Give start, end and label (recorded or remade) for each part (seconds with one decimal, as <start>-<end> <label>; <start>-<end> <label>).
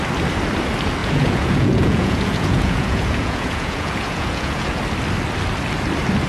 0.0-1.0 recorded; 1.0-4.8 remade; 4.8-6.3 recorded